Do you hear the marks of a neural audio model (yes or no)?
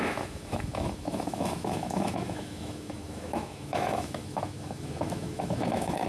yes